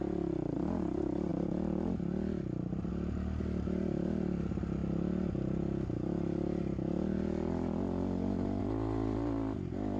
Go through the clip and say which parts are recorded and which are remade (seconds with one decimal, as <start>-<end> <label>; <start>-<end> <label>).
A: 0.0-10.0 recorded